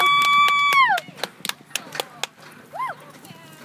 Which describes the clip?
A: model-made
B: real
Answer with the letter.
B